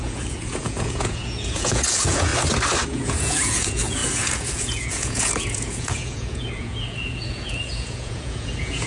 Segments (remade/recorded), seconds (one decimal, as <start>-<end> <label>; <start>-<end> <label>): 0.0-2.3 remade; 2.3-2.9 recorded; 2.9-8.9 remade